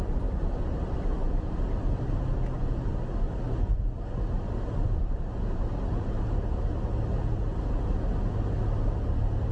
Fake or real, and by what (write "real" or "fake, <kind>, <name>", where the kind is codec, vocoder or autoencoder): real